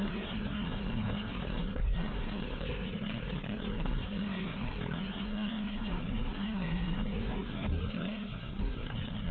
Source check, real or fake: fake